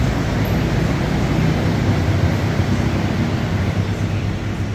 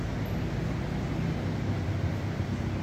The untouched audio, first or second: second